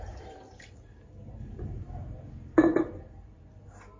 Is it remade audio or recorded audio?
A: remade